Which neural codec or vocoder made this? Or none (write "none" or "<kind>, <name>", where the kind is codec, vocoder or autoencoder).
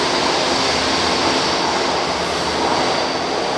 none